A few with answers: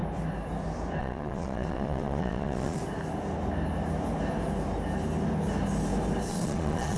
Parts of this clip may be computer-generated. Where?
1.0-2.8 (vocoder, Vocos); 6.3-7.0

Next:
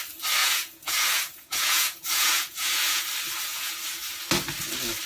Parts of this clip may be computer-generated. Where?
0.4-3.0 (vocoder, Vocos); 3.5-4.2

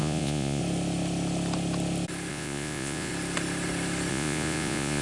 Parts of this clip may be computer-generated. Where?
0.0-0.6 (vocoder, Vocos); 2.3-3.1; 4.1-5.0

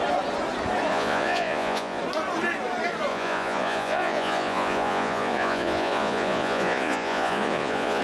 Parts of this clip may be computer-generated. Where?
0.9-2.0 (vocoder, Vocos); 3.1-8.0

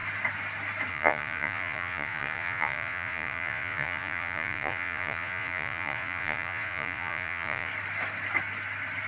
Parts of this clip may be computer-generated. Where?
0.9-7.7 (vocoder, Vocos)

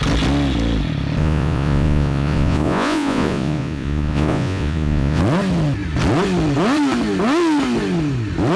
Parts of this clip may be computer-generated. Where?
1.2-5.2 (vocoder, Vocos)

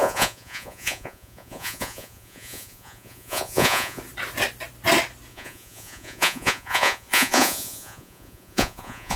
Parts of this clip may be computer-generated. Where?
0.0-4.0 (vocoder, Vocos); 5.3-9.2